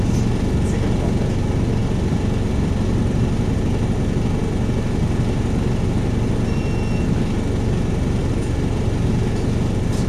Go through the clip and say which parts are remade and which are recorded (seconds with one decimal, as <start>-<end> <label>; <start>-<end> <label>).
0.0-1.8 recorded; 1.8-3.6 remade; 3.6-8.2 recorded; 8.2-9.1 remade; 9.1-10.1 recorded